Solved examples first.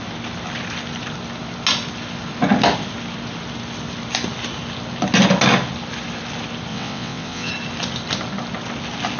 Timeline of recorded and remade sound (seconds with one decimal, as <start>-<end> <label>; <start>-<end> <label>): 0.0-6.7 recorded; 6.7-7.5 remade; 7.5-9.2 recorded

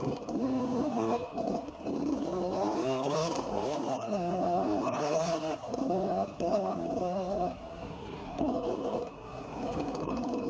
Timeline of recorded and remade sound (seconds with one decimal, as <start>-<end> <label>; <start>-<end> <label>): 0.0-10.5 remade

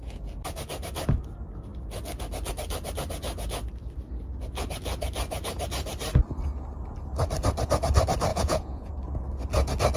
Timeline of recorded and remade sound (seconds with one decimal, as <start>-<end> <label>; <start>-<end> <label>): 0.0-8.3 recorded; 8.3-8.9 remade; 8.9-10.0 recorded

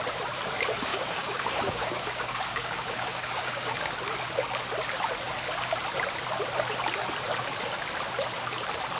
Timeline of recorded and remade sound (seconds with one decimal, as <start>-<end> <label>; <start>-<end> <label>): 0.0-0.9 recorded; 0.9-3.9 remade; 3.9-9.0 recorded